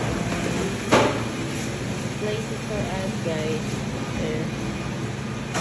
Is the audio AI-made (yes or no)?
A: no